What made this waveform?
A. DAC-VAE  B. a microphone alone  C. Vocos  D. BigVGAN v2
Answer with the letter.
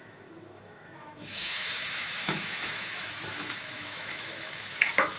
A